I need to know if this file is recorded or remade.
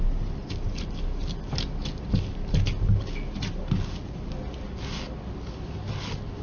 recorded